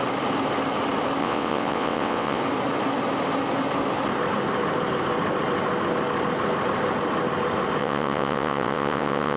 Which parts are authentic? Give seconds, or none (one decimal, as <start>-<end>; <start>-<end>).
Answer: 0.0-1.2; 2.4-7.8